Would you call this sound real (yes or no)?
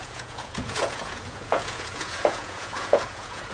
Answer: no